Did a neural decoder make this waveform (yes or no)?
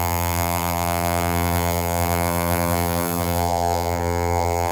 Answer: yes